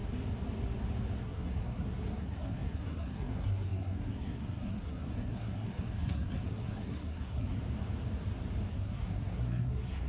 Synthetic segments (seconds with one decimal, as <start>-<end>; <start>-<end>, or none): 1.2-7.6; 8.7-10.1